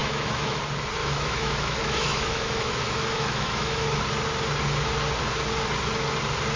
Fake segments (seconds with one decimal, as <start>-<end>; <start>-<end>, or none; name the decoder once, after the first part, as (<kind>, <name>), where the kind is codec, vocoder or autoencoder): 0.0-0.6 (autoencoder, DAC-VAE); 1.0-4.0